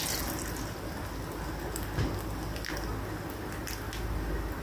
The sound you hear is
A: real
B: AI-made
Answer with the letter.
A